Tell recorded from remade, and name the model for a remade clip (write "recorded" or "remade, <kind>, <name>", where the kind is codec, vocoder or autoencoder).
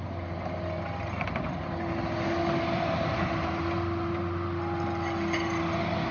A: recorded